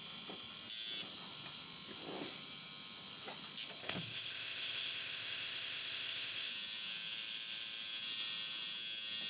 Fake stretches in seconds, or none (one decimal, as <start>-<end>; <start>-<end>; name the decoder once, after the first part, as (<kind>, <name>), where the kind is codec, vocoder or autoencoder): 3.8-6.5 (codec, ZipCodec)